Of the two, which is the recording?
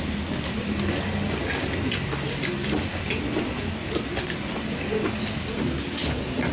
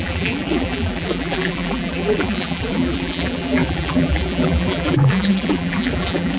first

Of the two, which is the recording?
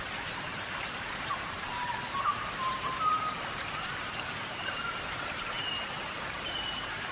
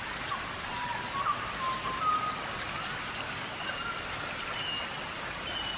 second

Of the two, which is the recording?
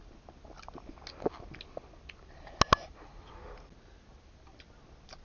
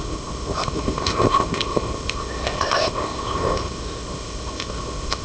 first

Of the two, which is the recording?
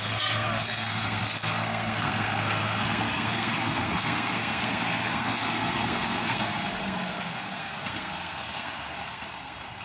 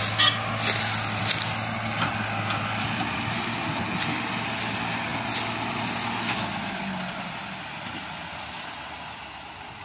second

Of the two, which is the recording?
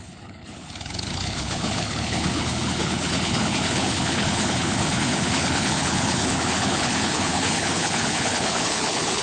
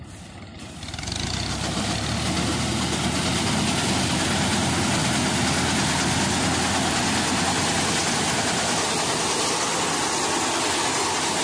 second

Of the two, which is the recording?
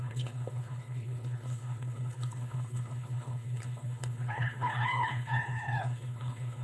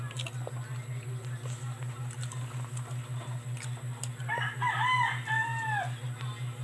second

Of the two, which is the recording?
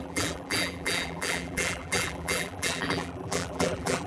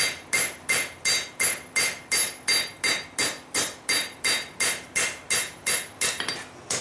second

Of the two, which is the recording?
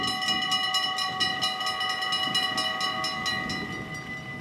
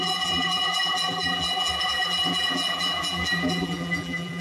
first